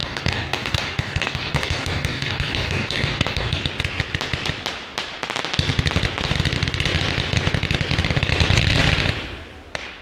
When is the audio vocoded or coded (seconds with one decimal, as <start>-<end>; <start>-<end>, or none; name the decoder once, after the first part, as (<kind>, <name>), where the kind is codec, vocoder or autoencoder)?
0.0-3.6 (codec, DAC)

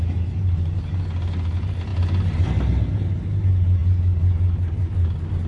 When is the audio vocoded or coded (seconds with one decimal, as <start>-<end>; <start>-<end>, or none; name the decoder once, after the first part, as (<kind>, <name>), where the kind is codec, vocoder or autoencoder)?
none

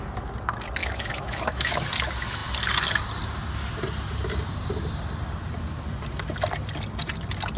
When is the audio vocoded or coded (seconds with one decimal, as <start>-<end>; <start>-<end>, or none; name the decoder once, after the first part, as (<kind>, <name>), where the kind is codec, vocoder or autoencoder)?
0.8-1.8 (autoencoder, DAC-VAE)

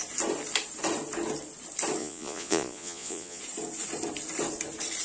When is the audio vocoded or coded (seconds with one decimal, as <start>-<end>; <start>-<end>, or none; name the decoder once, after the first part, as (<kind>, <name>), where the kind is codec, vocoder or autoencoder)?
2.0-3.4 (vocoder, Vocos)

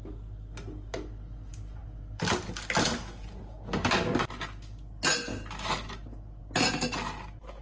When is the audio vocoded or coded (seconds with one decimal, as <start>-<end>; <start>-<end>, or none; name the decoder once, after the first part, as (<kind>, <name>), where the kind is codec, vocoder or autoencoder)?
none